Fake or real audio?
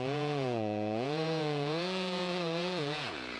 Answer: fake